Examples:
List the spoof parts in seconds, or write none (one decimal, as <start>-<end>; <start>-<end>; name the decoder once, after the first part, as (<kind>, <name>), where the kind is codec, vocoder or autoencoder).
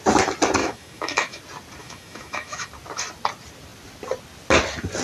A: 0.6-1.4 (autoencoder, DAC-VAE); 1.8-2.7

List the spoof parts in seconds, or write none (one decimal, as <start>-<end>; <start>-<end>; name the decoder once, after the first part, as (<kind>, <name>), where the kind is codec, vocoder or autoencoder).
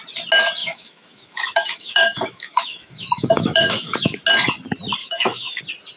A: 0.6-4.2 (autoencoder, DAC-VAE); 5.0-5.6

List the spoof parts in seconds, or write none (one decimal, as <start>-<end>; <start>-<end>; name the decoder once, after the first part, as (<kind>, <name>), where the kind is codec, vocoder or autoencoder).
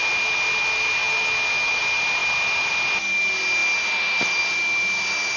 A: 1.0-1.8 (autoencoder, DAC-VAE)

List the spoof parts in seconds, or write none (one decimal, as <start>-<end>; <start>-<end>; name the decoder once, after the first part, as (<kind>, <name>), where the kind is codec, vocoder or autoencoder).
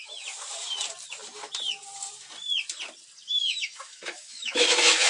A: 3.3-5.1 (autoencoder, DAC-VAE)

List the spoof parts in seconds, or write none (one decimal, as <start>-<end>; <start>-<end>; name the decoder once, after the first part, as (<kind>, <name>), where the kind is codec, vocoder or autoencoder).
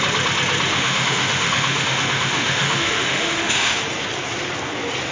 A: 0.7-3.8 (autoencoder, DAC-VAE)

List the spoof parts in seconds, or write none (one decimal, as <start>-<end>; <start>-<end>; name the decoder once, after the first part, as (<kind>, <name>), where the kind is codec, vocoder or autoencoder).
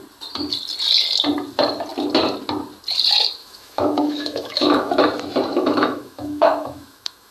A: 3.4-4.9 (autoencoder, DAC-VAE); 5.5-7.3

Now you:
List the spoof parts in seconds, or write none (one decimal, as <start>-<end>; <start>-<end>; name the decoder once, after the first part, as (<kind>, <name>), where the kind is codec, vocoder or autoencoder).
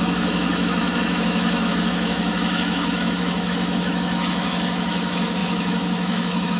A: 0.0-6.6 (autoencoder, DAC-VAE)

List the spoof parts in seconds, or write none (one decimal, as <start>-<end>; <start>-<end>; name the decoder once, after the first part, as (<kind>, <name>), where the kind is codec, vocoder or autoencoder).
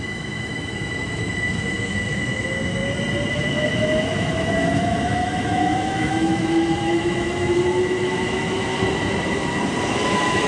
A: 0.0-2.8 (autoencoder, DAC-VAE); 3.3-8.7; 9.9-10.5